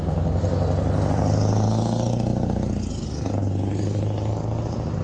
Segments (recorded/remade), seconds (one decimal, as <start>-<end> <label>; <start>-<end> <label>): 0.0-5.0 recorded